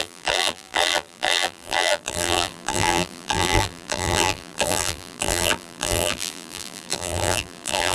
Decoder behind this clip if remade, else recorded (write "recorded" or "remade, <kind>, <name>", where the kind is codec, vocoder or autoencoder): remade, vocoder, BigVGAN v2